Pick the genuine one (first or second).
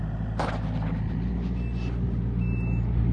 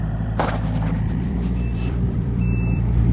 first